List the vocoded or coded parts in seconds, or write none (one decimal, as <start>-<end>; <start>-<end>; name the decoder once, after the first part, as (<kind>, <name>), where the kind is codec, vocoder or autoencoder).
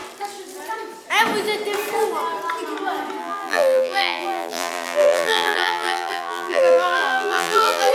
3.2-7.9 (vocoder, BigVGAN v2)